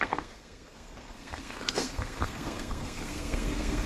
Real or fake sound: fake